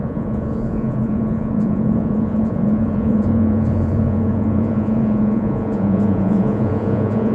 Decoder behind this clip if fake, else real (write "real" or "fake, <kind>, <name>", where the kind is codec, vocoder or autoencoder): fake, vocoder, Vocos